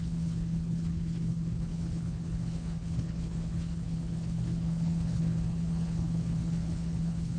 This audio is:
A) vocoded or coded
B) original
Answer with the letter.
A